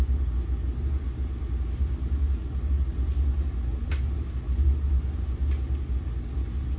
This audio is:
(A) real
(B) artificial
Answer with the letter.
A